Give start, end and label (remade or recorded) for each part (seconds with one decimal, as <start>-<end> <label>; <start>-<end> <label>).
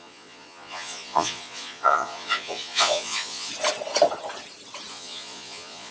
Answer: 0.0-3.5 remade; 3.5-4.9 recorded; 4.9-5.9 remade